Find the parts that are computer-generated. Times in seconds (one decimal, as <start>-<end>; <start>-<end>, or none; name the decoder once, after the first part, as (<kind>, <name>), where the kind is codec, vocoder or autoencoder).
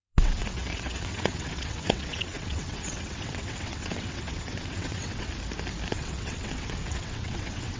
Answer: 0.0-5.3 (vocoder, WaveNeXt); 5.9-7.8